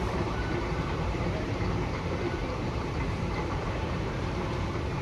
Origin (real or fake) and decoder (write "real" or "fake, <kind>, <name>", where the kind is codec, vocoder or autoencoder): fake, vocoder, BigVGAN v2